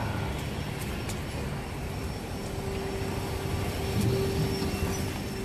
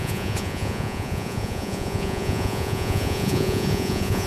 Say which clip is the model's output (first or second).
second